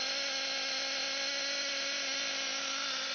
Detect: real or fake real